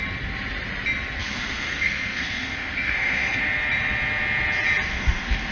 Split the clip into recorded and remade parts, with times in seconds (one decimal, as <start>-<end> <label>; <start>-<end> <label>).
0.0-1.2 recorded; 1.2-3.4 remade; 3.4-4.9 recorded; 4.9-5.5 remade